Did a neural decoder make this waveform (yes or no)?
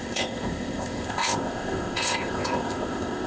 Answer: yes